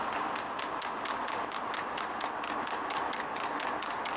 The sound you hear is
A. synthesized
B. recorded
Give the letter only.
B